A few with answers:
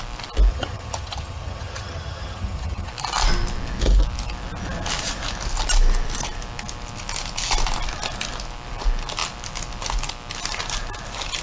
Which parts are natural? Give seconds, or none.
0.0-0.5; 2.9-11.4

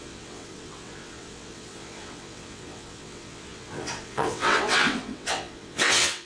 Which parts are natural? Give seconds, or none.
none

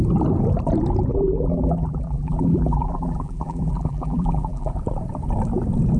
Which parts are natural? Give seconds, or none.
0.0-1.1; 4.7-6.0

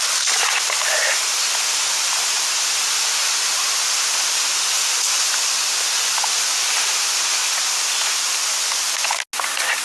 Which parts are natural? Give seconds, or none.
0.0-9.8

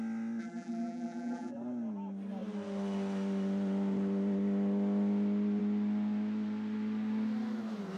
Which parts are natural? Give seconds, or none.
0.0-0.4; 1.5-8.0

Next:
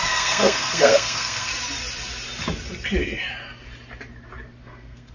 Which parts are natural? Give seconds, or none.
1.5-4.6

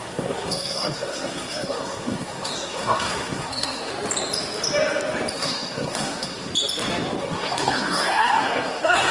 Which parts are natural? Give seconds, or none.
3.9-5.3; 6.5-7.2

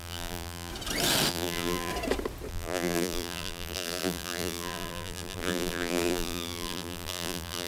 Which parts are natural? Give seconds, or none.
0.7-1.3; 1.9-2.5